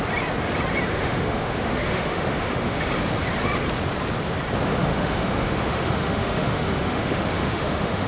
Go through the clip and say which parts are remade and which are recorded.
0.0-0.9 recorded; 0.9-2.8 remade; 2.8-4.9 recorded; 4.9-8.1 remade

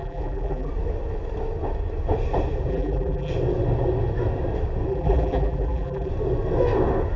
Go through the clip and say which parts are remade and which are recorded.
0.0-0.7 remade; 0.7-2.7 recorded; 2.7-3.3 remade; 3.3-4.9 recorded; 4.9-6.1 remade; 6.1-7.2 recorded

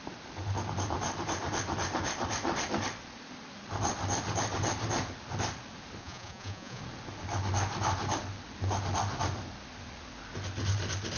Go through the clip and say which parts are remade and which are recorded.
0.0-6.0 recorded; 6.0-6.8 remade; 6.8-11.2 recorded